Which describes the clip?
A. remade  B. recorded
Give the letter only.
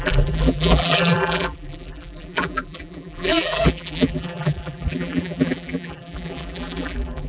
A